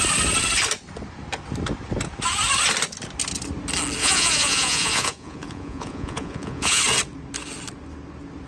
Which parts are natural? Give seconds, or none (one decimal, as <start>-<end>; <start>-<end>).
0.0-4.0; 6.8-8.5

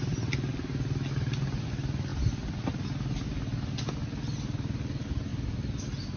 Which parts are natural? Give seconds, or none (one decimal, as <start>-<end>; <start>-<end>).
0.0-5.3; 5.8-6.2